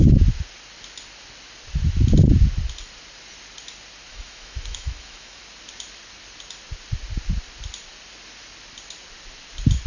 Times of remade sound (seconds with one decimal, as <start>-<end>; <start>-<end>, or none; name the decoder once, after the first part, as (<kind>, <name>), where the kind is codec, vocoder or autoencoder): 4.1-5.4 (autoencoder, DAC-VAE)